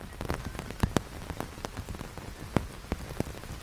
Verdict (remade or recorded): recorded